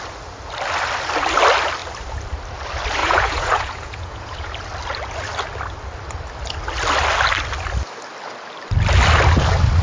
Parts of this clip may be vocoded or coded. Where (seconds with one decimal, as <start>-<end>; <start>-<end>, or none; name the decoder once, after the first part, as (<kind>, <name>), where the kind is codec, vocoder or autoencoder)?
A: 3.0-4.5 (vocoder, Vocos)